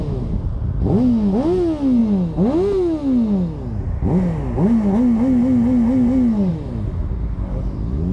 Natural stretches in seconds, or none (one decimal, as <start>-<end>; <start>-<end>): 0.0-8.1